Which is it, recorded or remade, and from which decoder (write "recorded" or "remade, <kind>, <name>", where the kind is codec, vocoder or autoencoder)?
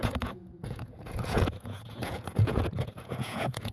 remade, vocoder, Vocos